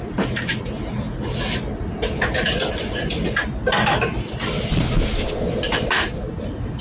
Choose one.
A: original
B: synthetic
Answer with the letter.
A